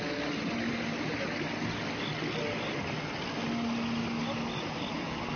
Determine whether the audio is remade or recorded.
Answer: recorded